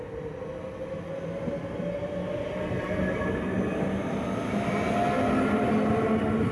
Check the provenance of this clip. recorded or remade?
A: recorded